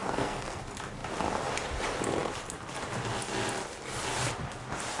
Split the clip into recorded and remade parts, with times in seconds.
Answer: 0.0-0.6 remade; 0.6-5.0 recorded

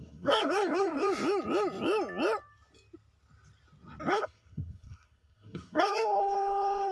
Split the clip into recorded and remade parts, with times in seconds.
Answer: 0.0-1.1 remade; 1.1-4.1 recorded; 4.1-6.9 remade

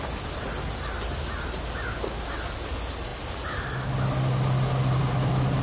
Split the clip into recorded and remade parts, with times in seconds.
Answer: 0.0-5.6 recorded

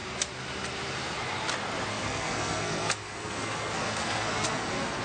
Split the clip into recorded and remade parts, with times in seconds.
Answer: 0.0-1.9 recorded; 1.9-5.0 remade

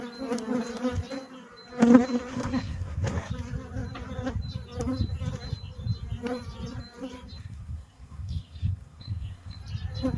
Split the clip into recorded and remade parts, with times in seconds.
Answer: 0.0-2.3 recorded; 2.3-3.3 remade; 3.3-7.4 recorded; 7.4-9.6 remade; 9.6-10.2 recorded